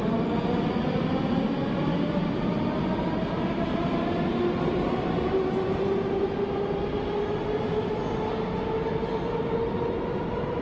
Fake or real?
real